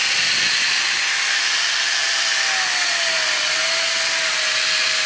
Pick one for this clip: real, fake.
real